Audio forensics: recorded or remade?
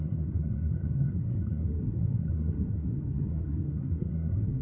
remade